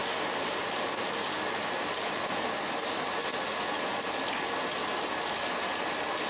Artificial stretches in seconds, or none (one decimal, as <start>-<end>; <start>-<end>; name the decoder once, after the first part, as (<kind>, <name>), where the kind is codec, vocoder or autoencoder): none